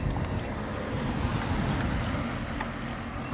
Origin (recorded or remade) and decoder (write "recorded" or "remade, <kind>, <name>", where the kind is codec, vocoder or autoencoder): recorded